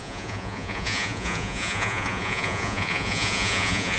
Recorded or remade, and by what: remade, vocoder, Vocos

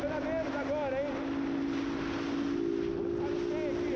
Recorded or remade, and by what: recorded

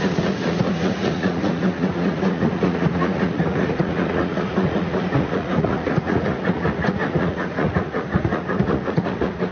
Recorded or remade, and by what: remade, vocoder, Vocos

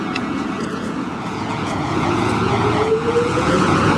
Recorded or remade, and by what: remade, vocoder, Vocos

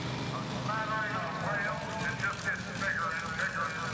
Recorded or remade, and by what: recorded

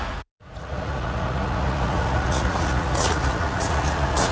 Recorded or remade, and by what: remade, vocoder, Vocos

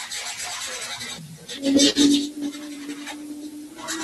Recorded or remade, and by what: recorded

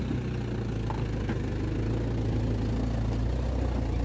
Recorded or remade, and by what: recorded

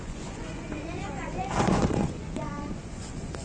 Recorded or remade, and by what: remade, vocoder, Vocos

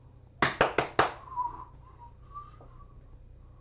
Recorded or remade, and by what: recorded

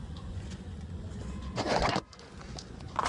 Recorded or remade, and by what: remade, vocoder, Vocos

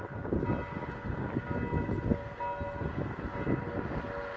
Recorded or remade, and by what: recorded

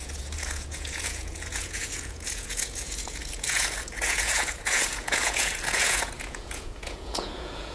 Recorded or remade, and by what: remade, vocoder, Vocos